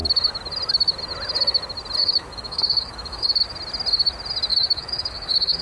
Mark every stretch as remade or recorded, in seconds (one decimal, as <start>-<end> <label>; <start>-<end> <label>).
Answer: 0.0-2.0 recorded; 2.0-3.4 remade; 3.4-4.5 recorded; 4.5-5.6 remade